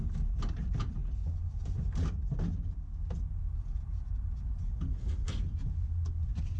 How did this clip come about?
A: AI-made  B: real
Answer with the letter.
B